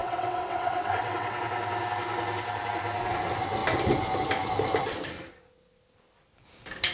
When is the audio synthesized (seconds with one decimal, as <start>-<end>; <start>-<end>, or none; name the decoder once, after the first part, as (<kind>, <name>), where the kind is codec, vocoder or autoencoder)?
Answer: 0.0-1.4 (vocoder, WaveNeXt)